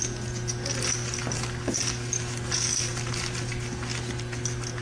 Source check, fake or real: real